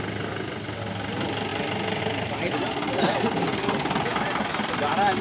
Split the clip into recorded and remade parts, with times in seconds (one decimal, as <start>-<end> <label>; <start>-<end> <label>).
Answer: 0.0-5.2 recorded

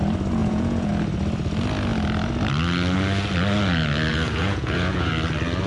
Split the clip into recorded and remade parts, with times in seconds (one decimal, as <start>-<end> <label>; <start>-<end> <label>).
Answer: 0.0-0.4 recorded; 0.4-0.9 remade; 0.9-4.1 recorded; 4.1-5.1 remade; 5.1-5.7 recorded

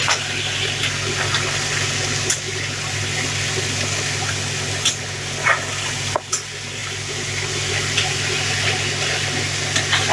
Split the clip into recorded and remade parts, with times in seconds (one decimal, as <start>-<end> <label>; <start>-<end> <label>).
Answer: 0.0-10.1 recorded

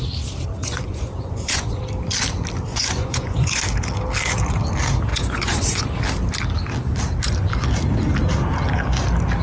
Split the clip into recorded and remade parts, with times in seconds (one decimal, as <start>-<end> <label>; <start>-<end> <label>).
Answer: 0.0-0.6 recorded; 0.6-1.8 remade; 1.8-2.7 recorded; 2.7-3.6 remade; 3.6-5.1 recorded; 5.1-5.8 remade; 5.8-9.4 recorded

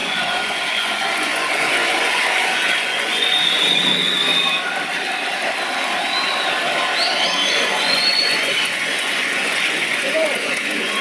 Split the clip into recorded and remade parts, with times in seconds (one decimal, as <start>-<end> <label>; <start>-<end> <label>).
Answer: 0.0-4.3 remade; 4.3-7.5 recorded; 7.5-11.0 remade

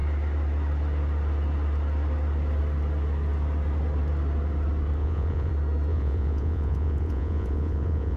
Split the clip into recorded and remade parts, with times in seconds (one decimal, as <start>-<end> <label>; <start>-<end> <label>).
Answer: 0.0-5.0 recorded; 5.0-5.5 remade; 5.5-5.9 recorded; 5.9-8.2 remade

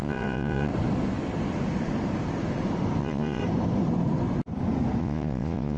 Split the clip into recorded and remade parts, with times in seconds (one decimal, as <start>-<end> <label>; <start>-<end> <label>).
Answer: 0.0-0.7 remade; 0.7-3.0 recorded; 3.0-3.4 remade; 3.4-5.0 recorded; 5.0-5.8 remade